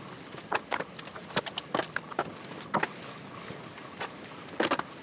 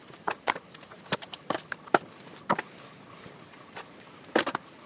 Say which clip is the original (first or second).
first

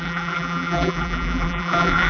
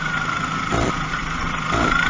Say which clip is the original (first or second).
second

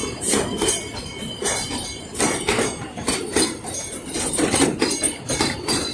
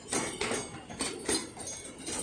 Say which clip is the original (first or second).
second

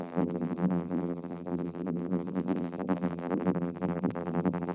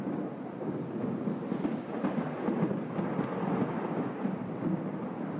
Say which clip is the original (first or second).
second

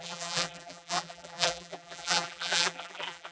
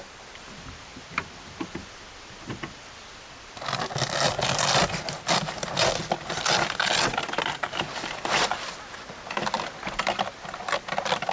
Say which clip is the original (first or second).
second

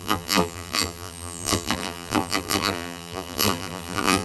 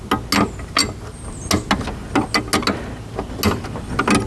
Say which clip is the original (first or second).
second